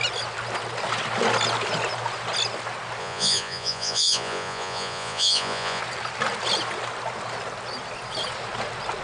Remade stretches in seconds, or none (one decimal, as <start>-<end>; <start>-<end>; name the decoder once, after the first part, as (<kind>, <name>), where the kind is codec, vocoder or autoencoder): 3.0-5.8 (vocoder, Vocos)